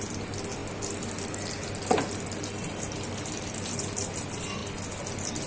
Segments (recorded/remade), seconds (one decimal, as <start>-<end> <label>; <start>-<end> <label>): 0.0-5.5 recorded

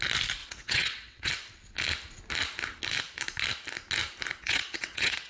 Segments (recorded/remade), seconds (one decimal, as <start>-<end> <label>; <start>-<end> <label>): 0.0-0.4 recorded; 0.4-1.3 remade; 1.3-4.4 recorded; 4.4-5.3 remade

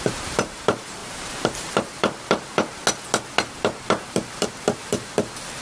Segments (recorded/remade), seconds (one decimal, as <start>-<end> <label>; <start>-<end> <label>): 0.0-1.0 remade; 1.0-1.6 recorded; 1.6-2.8 remade; 2.8-3.5 recorded; 3.5-5.6 remade

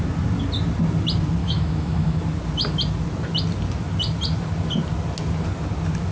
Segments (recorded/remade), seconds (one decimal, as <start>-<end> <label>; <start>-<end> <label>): 0.0-1.4 recorded; 1.4-2.2 remade; 2.2-6.1 recorded

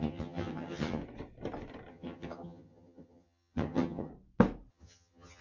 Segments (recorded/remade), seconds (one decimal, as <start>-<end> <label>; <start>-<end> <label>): 0.0-1.0 remade; 1.0-1.9 recorded; 1.9-4.1 remade; 4.1-4.7 recorded; 4.7-5.4 remade

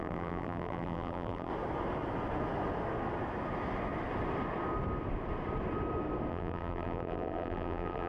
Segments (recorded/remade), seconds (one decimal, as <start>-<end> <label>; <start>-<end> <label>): 0.0-1.5 remade; 1.5-6.3 recorded; 6.3-8.1 remade

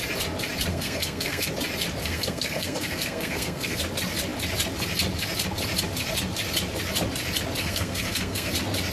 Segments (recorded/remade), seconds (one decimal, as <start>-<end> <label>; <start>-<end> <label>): 0.0-0.7 recorded; 0.7-1.5 remade; 1.5-2.0 recorded; 2.0-3.8 remade; 3.8-7.6 recorded; 7.6-8.5 remade; 8.5-8.9 recorded